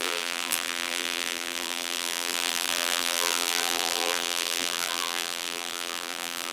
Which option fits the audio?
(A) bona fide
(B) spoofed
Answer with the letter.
B